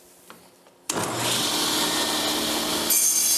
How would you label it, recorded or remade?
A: recorded